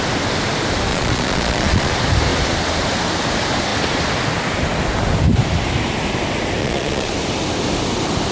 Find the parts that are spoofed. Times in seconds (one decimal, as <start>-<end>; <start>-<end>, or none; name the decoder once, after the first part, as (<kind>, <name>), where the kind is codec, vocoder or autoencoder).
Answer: 0.9-1.9 (vocoder, Vocos); 6.6-7.1